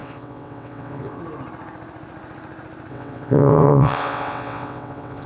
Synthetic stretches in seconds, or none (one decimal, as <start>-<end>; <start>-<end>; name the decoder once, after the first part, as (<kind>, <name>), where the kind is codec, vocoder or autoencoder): 0.0-1.2 (vocoder, WaveNeXt); 2.9-5.3